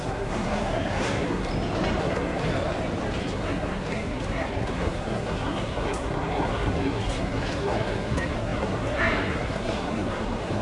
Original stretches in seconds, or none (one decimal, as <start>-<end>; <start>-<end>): 1.5-2.0; 2.5-3.2